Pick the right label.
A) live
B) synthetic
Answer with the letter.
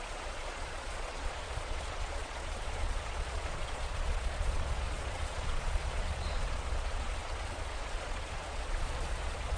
B